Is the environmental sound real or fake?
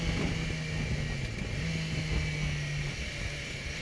real